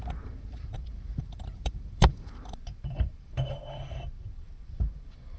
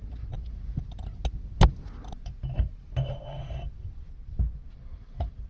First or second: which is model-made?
first